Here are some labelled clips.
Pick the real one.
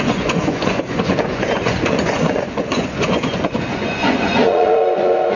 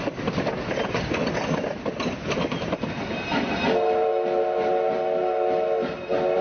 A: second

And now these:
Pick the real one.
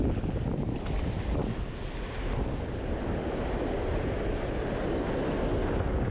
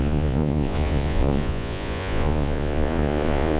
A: first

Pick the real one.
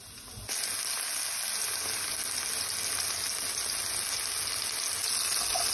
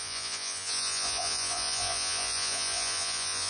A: first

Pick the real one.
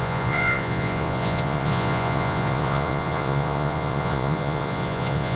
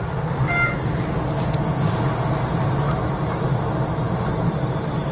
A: second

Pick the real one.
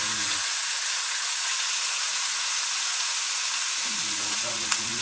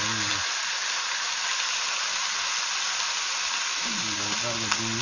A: second